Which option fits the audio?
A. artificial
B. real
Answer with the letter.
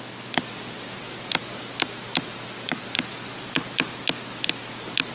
B